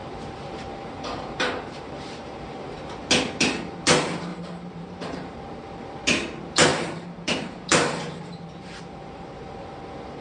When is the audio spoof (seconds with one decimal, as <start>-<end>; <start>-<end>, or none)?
0.0-3.1; 4.3-5.4; 6.7-9.5